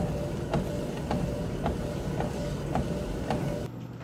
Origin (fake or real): real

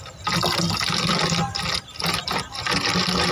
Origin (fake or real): real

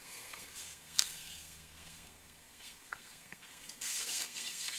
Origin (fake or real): fake